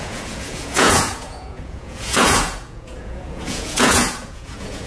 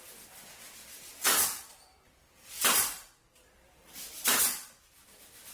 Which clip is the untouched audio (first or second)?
second